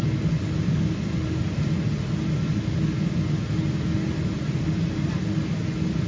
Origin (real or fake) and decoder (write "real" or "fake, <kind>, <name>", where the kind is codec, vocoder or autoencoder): real